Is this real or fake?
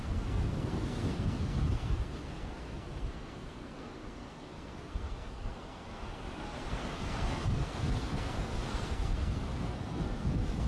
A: fake